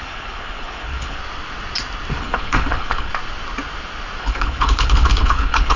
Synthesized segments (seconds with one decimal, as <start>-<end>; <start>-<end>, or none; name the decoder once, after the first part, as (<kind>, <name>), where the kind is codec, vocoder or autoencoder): 0.0-1.2 (codec, HILCodec); 2.2-3.1; 4.2-5.8